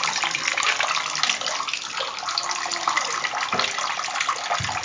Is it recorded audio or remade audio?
recorded